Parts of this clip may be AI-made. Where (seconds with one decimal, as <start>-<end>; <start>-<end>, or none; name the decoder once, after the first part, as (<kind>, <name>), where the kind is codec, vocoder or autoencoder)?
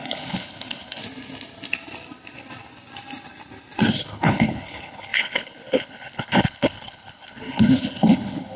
0.0-1.0 (codec, HILCodec); 3.9-8.6